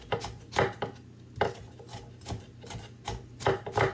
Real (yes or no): yes